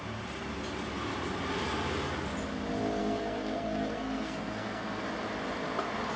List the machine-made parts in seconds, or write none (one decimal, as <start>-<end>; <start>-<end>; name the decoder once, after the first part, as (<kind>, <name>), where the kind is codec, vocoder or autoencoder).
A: 3.0-5.0 (codec, SNAC)